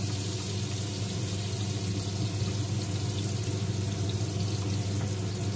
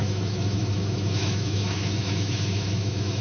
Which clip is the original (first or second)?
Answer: first